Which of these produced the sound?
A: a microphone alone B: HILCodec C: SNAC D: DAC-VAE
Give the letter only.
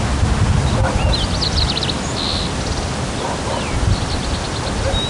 A